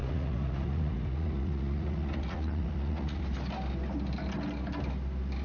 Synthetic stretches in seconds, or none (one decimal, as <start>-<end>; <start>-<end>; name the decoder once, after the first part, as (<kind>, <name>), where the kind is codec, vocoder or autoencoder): 0.0-3.2 (vocoder, Vocos)